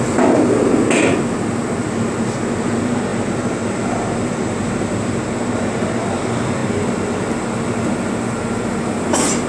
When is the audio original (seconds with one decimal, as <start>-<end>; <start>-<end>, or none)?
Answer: 0.0-9.5